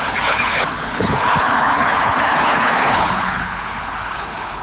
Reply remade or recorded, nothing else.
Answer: remade